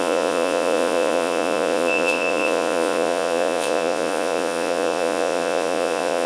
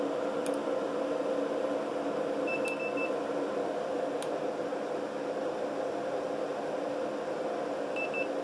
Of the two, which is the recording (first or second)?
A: second